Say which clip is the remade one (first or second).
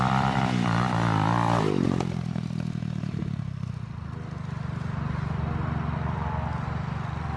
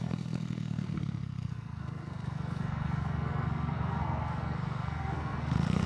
second